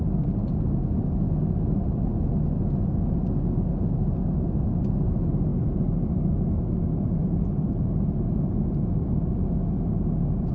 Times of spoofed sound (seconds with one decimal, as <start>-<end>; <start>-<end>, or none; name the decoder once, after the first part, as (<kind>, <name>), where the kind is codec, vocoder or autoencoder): none